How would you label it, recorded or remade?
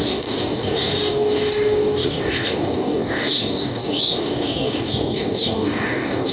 remade